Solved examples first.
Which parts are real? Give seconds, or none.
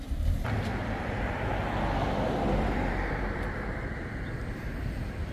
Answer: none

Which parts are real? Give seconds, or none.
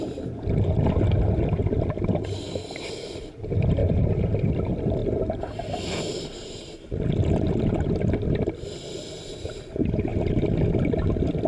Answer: 0.0-11.5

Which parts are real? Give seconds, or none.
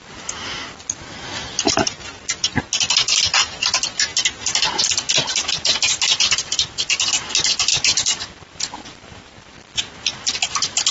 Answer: 0.0-10.9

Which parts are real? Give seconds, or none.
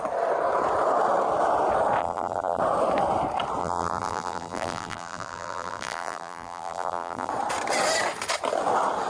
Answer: 0.0-2.0; 2.6-3.6; 7.3-9.1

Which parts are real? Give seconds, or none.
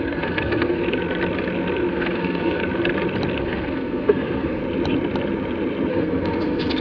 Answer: 0.8-1.9; 2.6-3.4; 4.6-5.9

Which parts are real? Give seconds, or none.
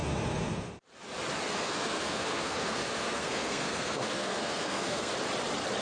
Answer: 0.0-1.6; 5.1-5.8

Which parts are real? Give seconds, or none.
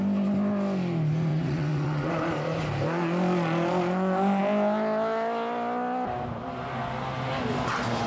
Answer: 0.0-1.3; 2.1-8.1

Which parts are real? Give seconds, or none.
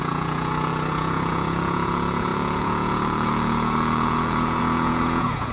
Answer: none